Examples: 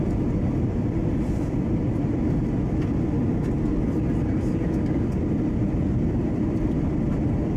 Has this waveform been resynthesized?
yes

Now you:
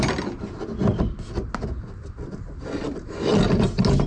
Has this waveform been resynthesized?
no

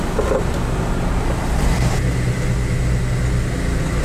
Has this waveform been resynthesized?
no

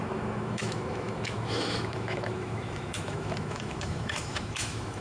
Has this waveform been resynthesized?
yes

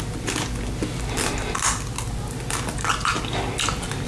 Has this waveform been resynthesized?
no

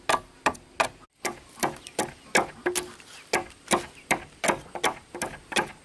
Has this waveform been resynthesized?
no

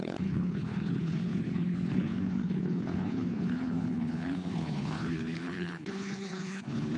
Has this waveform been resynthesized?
yes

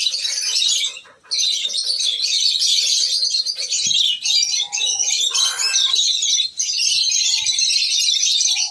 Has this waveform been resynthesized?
no